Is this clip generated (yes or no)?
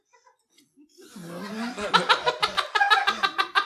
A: no